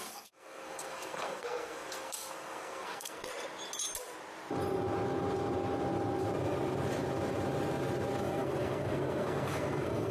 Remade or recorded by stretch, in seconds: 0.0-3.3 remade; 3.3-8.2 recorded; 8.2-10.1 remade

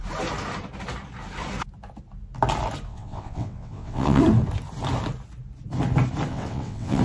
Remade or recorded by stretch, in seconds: 0.0-2.9 recorded; 2.9-4.2 remade; 4.2-6.3 recorded; 6.3-7.0 remade

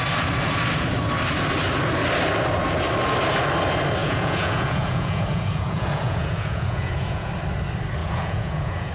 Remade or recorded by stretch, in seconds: 0.0-4.0 recorded; 4.0-7.3 remade; 7.3-8.0 recorded; 8.0-8.9 remade

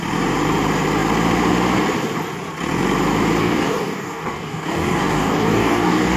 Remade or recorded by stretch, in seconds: 0.0-3.4 recorded; 3.4-6.2 remade

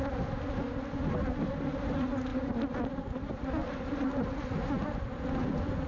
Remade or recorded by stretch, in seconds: 0.0-5.9 recorded

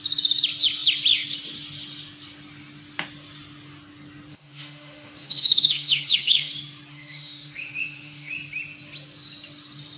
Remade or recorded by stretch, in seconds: 0.0-4.3 recorded; 4.3-6.5 remade; 6.5-6.9 recorded; 6.9-8.3 remade; 8.3-10.0 recorded